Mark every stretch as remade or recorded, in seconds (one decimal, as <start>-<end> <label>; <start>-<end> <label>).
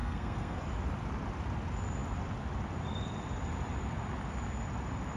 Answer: 0.0-0.6 remade; 0.6-5.2 recorded